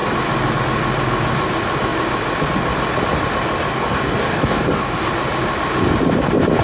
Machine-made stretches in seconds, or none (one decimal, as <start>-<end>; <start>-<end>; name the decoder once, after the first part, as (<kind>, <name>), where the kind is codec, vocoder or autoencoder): 3.7-5.1 (codec, DAC)